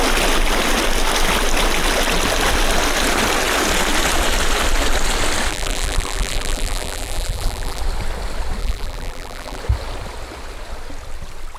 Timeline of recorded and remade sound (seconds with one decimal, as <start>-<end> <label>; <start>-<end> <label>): 0.0-5.5 recorded; 5.5-7.8 remade; 7.8-8.6 recorded; 8.6-9.6 remade; 9.6-11.6 recorded